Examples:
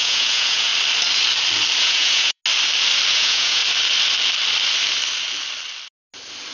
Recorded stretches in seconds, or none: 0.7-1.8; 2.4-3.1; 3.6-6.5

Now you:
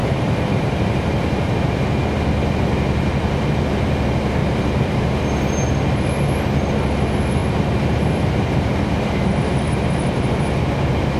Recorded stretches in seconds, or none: 1.5-4.4; 5.2-7.4; 10.3-11.2

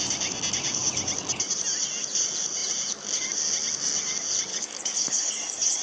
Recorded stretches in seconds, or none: 0.0-4.5

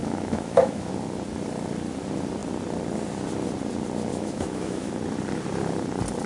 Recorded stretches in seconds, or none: 0.9-4.1; 4.9-6.3

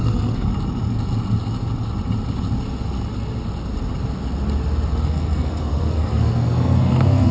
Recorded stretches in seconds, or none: 0.5-4.9

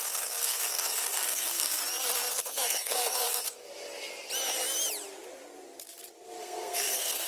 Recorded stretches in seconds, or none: 1.8-2.4; 3.7-6.4